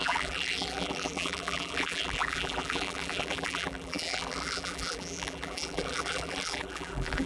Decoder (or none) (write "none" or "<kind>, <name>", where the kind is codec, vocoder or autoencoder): vocoder, BigVGAN v2